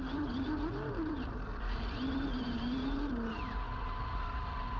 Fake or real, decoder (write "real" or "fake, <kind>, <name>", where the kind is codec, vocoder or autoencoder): fake, vocoder, BigVGAN v2